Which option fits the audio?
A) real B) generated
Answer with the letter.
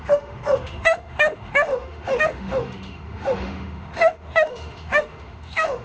B